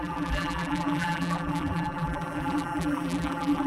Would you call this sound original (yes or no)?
no